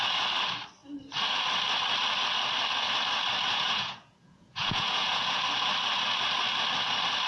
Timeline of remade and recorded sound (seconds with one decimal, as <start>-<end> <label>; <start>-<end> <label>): 0.0-3.5 recorded; 3.5-5.4 remade; 5.4-7.3 recorded